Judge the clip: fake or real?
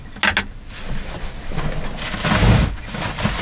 real